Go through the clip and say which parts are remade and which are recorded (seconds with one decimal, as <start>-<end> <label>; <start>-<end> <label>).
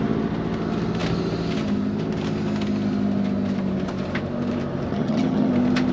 0.0-4.9 recorded; 4.9-5.5 remade; 5.5-5.9 recorded